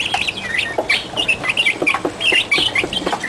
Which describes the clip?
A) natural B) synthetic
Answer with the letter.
A